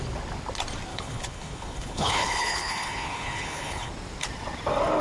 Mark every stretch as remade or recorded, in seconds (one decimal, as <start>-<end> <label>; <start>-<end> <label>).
0.0-0.9 recorded; 0.9-3.9 remade; 3.9-5.0 recorded